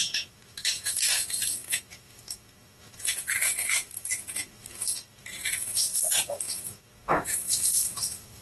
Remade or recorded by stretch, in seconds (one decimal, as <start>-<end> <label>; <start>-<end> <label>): 0.0-8.4 remade